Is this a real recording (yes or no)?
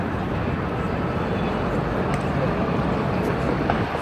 no